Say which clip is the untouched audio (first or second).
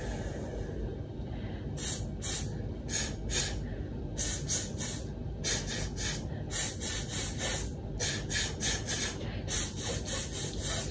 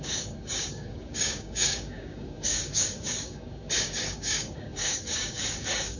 first